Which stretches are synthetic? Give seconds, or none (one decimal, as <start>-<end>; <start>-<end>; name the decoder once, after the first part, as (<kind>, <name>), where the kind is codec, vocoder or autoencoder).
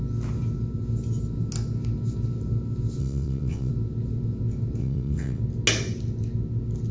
3.0-3.7 (vocoder, WaveNeXt); 4.8-5.4